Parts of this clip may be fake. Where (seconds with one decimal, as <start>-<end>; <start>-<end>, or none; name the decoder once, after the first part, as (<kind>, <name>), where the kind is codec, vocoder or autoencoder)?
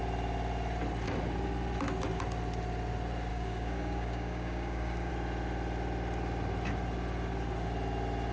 3.3-5.1 (codec, DAC)